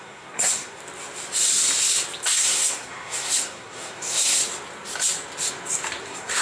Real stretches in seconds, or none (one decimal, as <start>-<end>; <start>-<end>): 0.8-2.3; 4.4-6.0